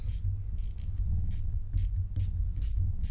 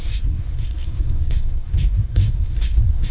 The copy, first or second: second